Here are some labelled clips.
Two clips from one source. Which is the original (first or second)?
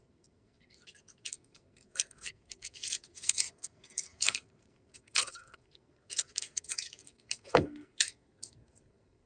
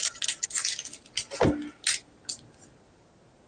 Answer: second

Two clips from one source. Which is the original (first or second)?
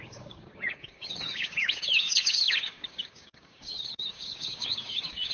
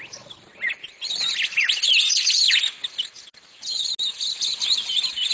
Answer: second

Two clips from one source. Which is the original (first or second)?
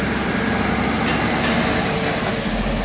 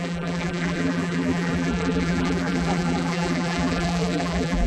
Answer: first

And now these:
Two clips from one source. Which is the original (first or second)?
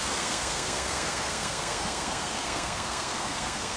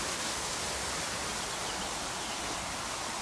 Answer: second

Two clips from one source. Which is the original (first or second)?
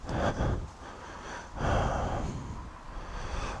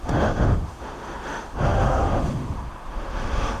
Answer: first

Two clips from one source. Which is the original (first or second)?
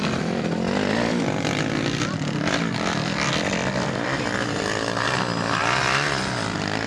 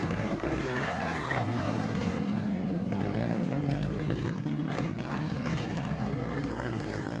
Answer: first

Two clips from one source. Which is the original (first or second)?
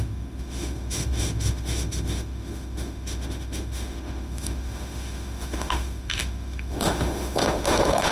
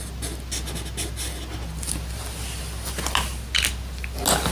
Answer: second